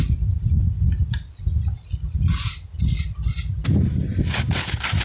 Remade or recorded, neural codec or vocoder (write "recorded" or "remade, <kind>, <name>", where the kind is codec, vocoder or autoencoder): recorded